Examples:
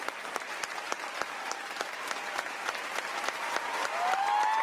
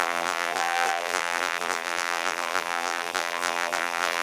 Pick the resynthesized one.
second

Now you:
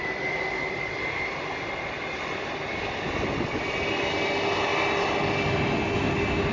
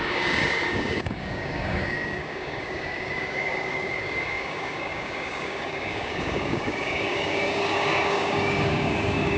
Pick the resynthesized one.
second